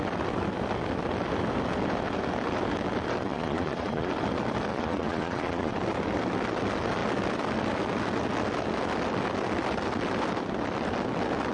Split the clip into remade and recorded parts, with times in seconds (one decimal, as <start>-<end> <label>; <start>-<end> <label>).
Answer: 0.0-3.2 recorded; 3.2-4.1 remade; 4.1-4.7 recorded; 4.7-5.7 remade; 5.7-11.5 recorded